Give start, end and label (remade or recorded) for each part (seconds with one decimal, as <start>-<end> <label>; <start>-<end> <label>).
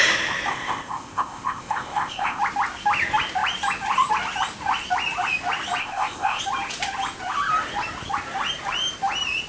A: 0.0-0.5 recorded; 0.5-2.4 remade; 2.4-5.8 recorded; 5.8-6.4 remade; 6.4-9.5 recorded